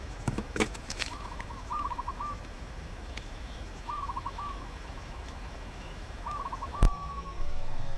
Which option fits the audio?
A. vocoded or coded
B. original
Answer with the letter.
A